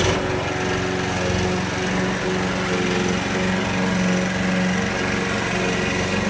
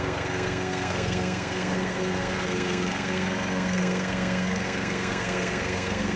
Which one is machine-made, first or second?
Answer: second